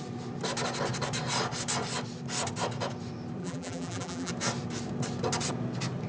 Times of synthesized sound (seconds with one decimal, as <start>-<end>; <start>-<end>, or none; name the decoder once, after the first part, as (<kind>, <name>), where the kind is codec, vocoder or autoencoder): 3.4-4.3 (vocoder, BigVGAN v2)